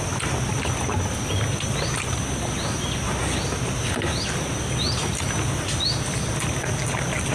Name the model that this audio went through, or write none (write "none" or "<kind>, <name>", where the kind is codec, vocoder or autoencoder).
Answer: none